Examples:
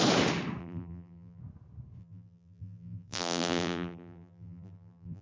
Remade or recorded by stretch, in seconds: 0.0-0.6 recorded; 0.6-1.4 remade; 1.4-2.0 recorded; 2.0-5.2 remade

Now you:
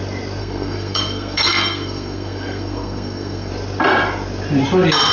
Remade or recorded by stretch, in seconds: 0.0-0.4 recorded; 0.4-3.5 remade; 3.5-5.1 recorded

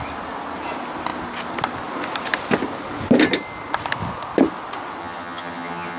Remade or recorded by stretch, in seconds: 0.0-5.0 recorded; 5.0-6.0 remade

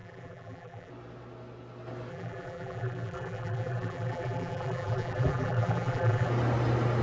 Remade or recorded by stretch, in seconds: 0.0-0.9 remade; 0.9-2.1 recorded; 2.1-6.3 remade; 6.3-7.0 recorded

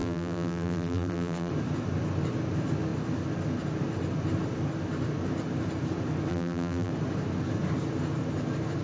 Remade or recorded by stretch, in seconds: 0.0-1.5 remade; 1.5-6.3 recorded; 6.3-6.9 remade; 6.9-8.8 recorded